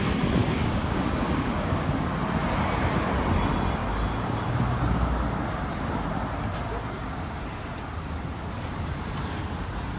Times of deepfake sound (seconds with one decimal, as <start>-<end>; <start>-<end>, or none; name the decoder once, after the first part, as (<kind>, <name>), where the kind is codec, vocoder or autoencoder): 0.4-1.9 (codec, DAC)